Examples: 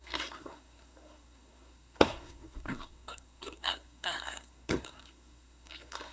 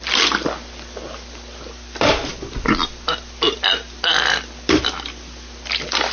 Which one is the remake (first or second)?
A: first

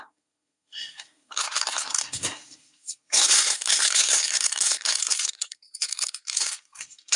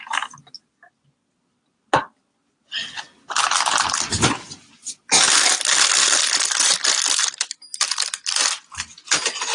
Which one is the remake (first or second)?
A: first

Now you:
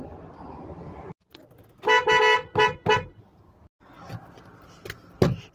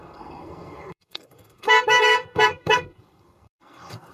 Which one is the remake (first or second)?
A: second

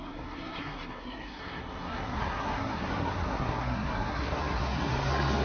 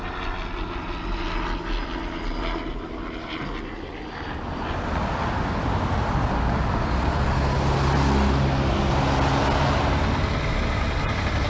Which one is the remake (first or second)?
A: first